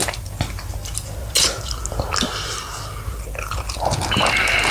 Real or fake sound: real